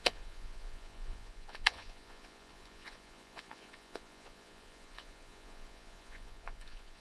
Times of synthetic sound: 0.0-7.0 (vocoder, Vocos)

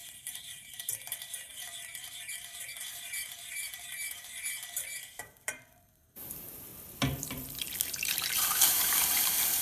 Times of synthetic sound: 0.0-1.5 (vocoder, BigVGAN v2); 2.1-6.7; 7.2-9.6

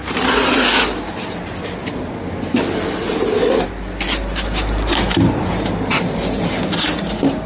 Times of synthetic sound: 4.2-6.2 (vocoder, BigVGAN v2); 7.1-7.5

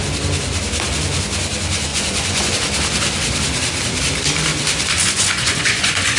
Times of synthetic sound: 1.9-2.5 (vocoder, Vocos); 5.0-6.2

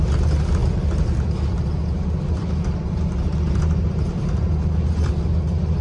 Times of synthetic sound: none

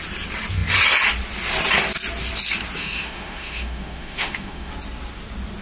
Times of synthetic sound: 2.8-4.7 (autoencoder, DAC-VAE)